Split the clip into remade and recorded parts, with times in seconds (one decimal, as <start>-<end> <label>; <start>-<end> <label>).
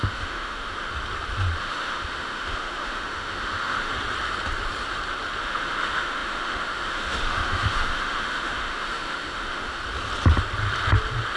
0.0-0.9 remade; 0.9-1.6 recorded; 1.6-3.9 remade; 3.9-5.4 recorded; 5.4-9.8 remade; 9.8-11.4 recorded